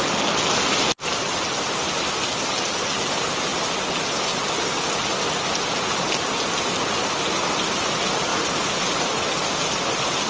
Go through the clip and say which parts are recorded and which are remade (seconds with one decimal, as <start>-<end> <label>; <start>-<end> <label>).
0.0-10.3 recorded